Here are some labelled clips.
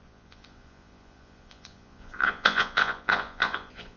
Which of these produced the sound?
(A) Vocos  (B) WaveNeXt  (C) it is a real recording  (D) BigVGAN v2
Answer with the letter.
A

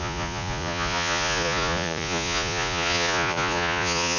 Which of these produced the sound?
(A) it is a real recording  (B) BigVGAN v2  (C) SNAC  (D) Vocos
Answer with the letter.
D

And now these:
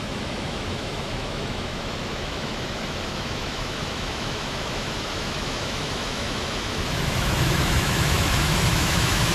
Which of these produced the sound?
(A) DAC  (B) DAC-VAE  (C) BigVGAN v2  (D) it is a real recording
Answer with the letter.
B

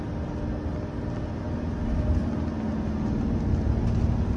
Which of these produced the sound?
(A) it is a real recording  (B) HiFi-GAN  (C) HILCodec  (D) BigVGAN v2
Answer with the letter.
A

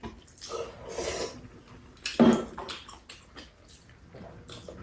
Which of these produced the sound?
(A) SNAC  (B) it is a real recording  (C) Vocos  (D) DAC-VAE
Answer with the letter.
B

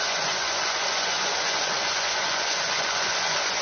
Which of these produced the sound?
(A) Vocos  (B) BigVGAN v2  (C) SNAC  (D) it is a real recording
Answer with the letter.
A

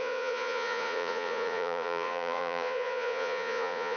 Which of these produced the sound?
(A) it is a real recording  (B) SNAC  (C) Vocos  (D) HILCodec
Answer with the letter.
C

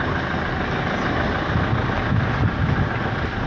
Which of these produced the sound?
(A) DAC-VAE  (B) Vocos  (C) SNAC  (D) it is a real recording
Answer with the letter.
D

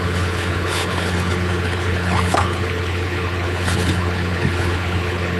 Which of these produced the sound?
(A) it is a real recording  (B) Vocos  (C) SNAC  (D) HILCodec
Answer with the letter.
D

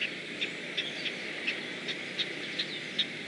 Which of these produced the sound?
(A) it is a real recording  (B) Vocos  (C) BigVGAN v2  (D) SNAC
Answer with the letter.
A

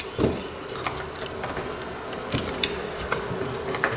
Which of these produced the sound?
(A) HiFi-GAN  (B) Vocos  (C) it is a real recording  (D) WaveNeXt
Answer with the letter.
C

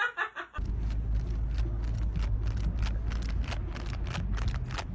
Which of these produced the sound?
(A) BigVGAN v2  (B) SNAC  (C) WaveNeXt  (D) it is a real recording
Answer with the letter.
D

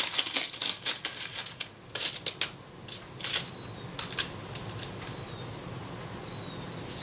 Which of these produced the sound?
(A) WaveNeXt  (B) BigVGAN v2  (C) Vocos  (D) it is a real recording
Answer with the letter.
D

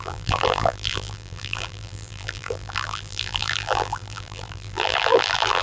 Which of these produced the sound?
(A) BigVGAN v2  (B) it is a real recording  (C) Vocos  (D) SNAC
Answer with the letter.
A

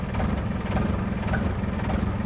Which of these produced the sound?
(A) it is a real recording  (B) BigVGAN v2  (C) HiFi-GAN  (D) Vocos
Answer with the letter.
A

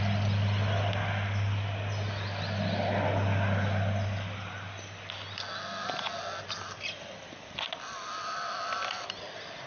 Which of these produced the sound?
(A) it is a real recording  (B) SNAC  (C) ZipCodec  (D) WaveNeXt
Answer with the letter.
A